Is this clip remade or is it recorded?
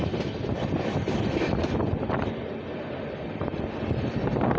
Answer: recorded